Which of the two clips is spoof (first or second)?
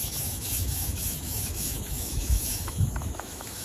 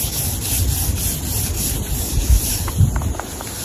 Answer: first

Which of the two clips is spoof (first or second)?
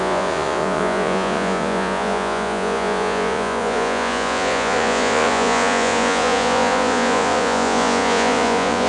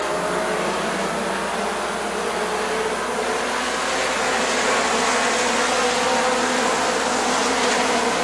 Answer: first